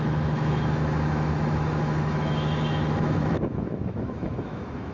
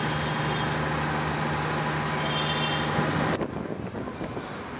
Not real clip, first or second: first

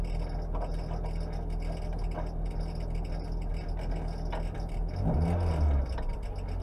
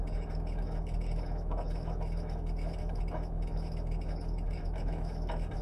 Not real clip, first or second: second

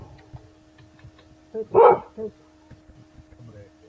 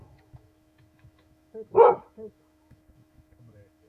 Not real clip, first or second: second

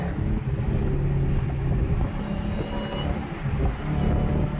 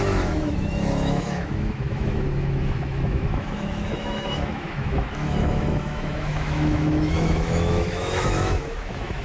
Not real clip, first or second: second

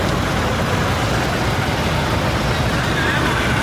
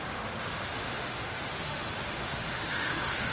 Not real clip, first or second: second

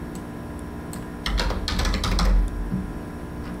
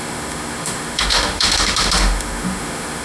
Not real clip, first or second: second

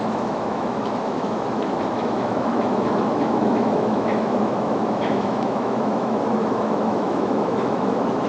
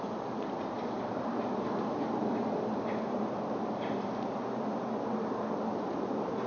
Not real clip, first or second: first